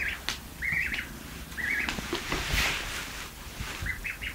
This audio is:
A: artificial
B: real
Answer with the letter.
B